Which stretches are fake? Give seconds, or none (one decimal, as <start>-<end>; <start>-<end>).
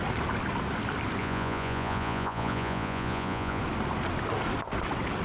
1.2-3.6